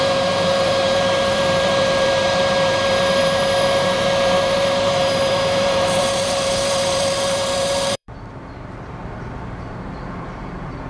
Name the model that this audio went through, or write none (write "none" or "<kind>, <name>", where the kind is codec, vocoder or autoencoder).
vocoder, BigVGAN v2